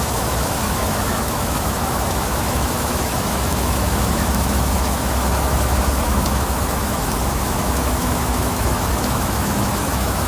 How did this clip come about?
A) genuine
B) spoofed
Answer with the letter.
B